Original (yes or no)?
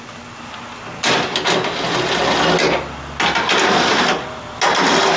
yes